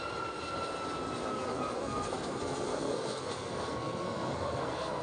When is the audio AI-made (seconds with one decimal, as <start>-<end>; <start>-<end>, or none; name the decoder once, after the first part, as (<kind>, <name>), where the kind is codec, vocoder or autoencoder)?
1.3-5.0 (codec, SNAC)